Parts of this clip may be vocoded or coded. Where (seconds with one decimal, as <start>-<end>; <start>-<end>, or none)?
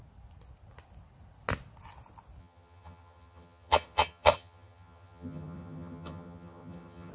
2.4-7.1